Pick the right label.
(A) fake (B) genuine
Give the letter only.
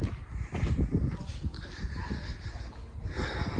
B